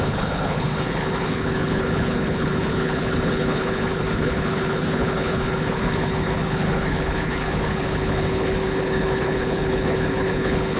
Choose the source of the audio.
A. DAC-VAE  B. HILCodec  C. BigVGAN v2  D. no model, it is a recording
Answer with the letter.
B